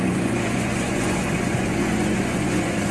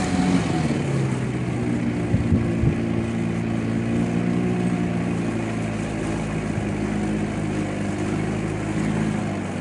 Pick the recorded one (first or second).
second